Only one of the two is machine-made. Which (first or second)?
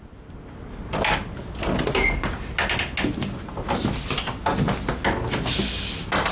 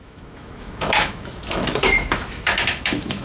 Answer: second